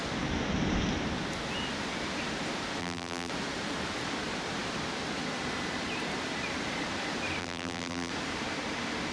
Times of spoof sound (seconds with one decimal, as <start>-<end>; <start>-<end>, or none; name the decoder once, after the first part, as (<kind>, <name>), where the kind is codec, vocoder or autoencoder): 2.8-3.3 (vocoder, BigVGAN v2); 7.4-8.1